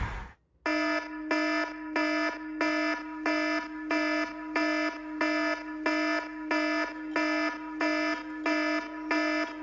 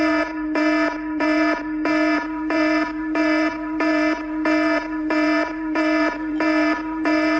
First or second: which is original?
first